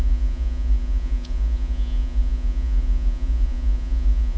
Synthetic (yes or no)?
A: yes